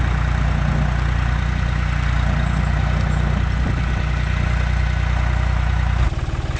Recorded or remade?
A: recorded